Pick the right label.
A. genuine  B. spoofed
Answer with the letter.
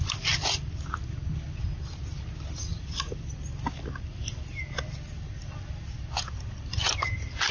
A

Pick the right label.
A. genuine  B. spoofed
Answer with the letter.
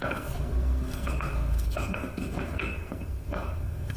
B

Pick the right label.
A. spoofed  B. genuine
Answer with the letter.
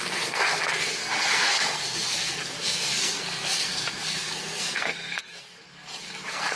A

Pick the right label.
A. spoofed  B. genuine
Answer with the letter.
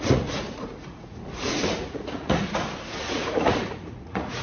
A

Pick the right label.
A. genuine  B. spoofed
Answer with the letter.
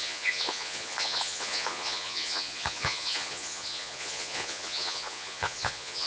B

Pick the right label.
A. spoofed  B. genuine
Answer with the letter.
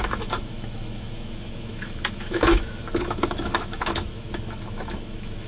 A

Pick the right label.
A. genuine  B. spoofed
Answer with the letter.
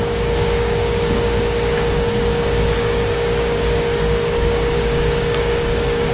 B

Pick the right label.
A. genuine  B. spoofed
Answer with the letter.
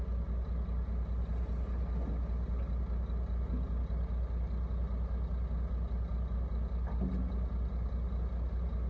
A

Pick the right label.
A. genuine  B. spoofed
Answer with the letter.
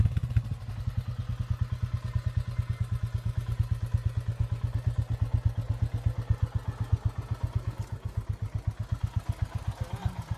A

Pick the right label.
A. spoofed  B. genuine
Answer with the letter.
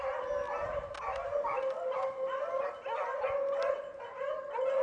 B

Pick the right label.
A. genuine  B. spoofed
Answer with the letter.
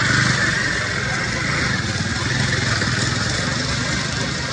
A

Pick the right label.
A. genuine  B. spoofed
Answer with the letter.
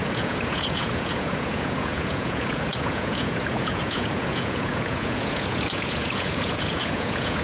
B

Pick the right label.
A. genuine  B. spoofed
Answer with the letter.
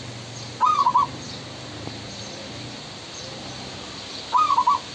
A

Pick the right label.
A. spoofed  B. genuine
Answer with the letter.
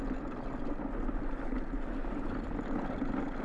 B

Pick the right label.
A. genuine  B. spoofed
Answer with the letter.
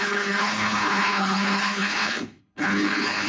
B